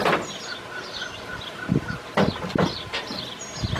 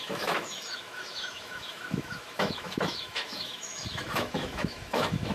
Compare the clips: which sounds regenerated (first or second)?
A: second